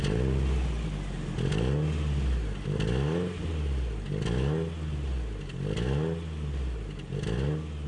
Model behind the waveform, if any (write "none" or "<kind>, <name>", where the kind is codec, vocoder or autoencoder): none